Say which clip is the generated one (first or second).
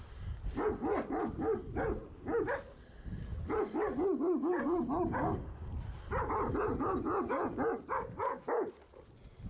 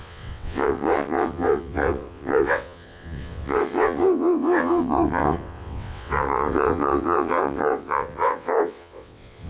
second